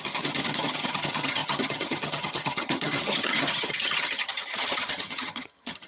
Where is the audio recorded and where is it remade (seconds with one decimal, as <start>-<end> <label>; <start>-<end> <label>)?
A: 0.0-5.9 remade